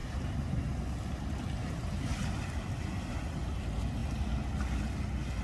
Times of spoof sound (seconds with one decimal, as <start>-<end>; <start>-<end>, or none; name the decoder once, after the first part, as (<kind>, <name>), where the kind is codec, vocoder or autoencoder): 0.0-0.6 (vocoder, BigVGAN v2); 2.1-3.3